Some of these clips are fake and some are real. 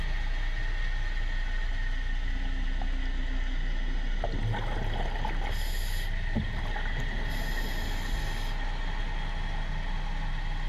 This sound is real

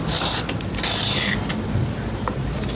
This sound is real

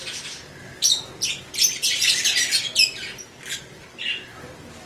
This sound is real